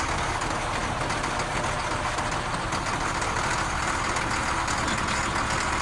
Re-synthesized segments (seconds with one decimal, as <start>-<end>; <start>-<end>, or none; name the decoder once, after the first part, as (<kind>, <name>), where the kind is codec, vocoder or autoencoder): none